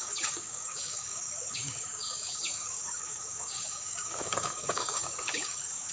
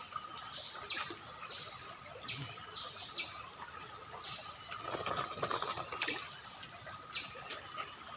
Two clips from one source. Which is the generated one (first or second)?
first